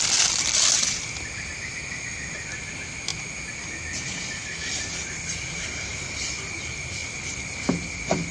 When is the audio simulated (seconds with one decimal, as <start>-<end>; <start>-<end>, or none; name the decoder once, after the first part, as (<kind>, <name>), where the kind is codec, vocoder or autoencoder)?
none